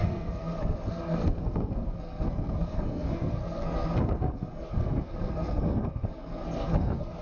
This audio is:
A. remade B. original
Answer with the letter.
A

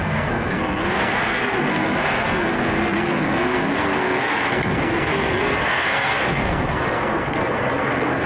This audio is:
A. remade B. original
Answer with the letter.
A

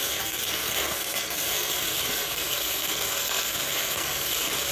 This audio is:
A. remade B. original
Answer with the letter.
A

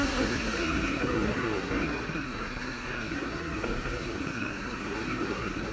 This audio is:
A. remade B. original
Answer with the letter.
A